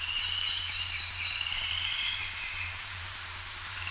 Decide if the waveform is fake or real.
fake